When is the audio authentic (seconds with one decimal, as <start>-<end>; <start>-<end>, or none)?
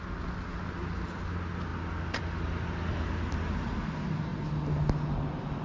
0.0-5.6